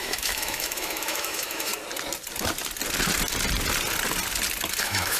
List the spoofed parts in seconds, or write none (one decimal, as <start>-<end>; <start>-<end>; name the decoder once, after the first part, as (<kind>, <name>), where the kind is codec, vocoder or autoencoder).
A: 0.0-1.7 (autoencoder, DAC-VAE); 4.8-5.2